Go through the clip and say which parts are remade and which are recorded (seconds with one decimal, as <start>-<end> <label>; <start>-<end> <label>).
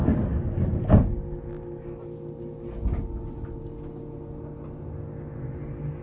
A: 0.0-6.0 recorded